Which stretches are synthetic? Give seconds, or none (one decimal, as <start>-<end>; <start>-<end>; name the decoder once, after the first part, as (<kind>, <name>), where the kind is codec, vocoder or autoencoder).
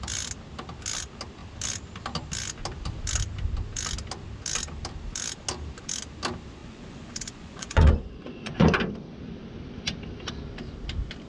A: 6.6-8.8 (vocoder, Vocos)